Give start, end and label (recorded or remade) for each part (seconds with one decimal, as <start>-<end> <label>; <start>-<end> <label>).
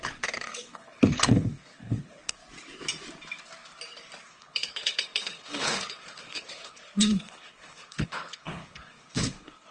0.0-2.4 remade; 2.4-4.3 recorded; 4.3-9.7 remade